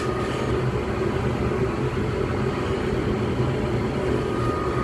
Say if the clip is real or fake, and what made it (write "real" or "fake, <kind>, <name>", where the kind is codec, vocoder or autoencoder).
real